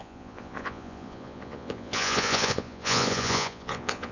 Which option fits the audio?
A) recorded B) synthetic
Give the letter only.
B